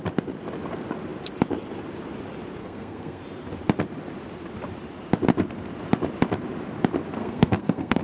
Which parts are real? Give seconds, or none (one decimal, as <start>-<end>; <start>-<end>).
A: 0.0-2.6; 3.2-7.2